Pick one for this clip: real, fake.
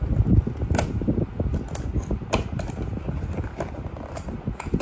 real